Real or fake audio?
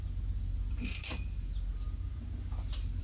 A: real